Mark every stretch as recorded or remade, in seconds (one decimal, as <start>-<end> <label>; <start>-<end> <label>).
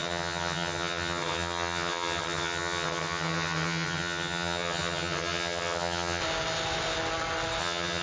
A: 0.0-6.2 remade; 6.2-7.6 recorded; 7.6-8.0 remade